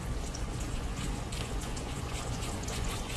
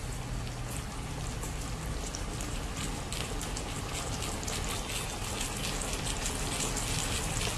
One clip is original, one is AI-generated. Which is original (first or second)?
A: second